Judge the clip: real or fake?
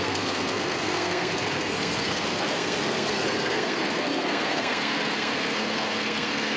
fake